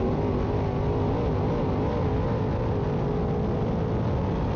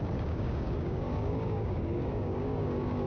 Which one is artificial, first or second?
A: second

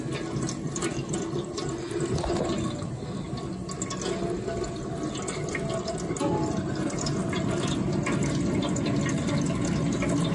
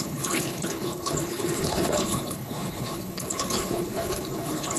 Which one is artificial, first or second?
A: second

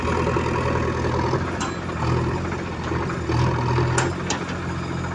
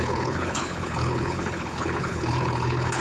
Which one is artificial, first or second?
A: second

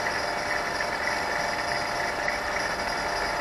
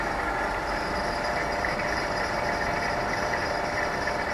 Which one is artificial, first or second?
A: second